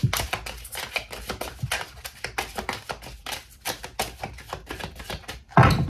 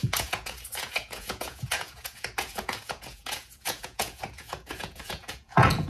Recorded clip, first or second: first